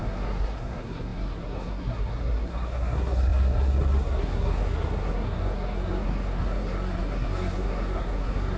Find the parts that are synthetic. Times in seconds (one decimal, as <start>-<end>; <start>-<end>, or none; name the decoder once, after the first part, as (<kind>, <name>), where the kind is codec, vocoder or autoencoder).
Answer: 0.0-8.6 (codec, SNAC)